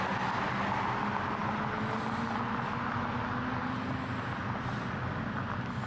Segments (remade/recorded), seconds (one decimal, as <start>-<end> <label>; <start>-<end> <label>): 0.0-5.9 recorded